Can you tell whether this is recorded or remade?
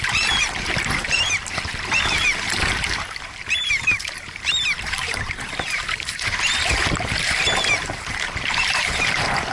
remade